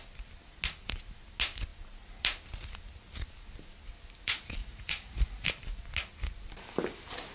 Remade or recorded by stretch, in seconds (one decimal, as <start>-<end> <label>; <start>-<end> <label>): 0.0-4.6 recorded; 4.6-5.5 remade; 5.5-7.3 recorded